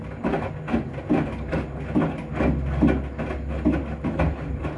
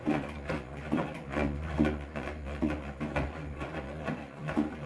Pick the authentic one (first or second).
first